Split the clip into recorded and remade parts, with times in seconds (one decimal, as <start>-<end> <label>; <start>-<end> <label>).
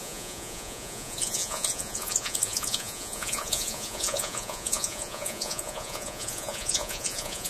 0.0-7.5 remade